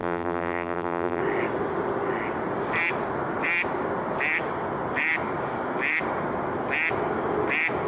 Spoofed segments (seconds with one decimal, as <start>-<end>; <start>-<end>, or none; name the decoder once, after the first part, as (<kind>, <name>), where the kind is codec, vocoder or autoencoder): 0.0-1.2 (vocoder, BigVGAN v2)